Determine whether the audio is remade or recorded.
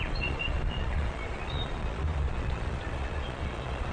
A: remade